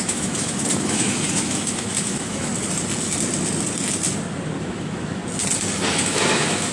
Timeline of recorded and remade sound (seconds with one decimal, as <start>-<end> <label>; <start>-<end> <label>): 0.0-2.5 remade; 2.5-4.6 recorded; 4.6-5.2 remade; 5.2-5.9 recorded; 5.9-6.7 remade